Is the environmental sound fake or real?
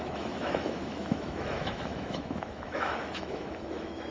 fake